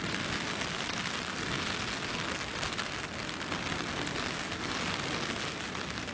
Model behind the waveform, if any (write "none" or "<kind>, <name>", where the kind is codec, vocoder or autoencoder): none